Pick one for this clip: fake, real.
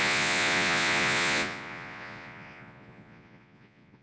fake